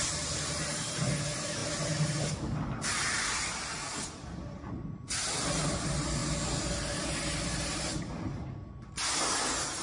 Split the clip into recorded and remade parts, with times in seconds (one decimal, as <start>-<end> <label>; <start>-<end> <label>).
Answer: 0.0-9.8 recorded